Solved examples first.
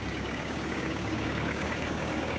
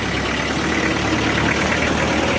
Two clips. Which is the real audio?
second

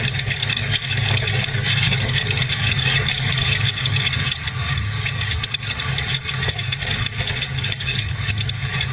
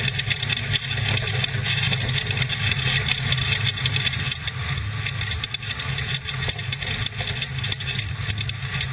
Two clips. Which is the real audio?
second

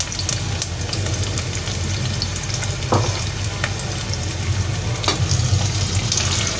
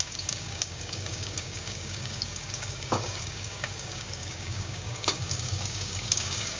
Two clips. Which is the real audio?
first